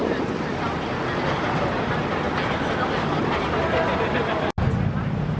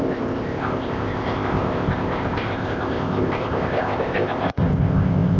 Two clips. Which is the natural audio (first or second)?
first